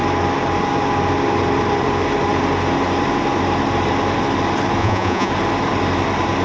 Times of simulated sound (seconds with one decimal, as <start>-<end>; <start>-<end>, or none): 4.8-5.3